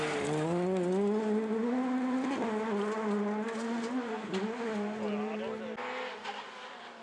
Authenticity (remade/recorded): recorded